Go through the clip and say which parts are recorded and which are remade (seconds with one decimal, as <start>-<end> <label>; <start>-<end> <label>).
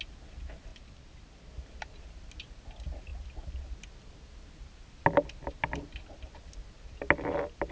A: 0.0-7.7 recorded